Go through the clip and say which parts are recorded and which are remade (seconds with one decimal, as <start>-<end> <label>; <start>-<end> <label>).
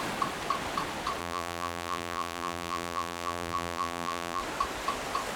0.0-1.2 recorded; 1.2-4.4 remade; 4.4-5.4 recorded